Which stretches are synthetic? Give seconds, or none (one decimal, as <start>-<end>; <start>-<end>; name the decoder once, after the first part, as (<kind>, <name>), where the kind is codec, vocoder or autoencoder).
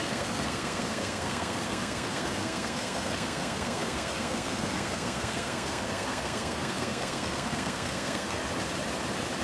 0.0-8.4 (codec, SNAC)